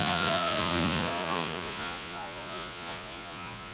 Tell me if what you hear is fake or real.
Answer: fake